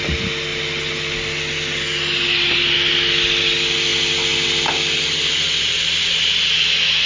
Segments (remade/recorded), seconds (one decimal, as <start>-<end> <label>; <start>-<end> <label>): 0.0-7.1 recorded